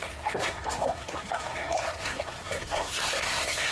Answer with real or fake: fake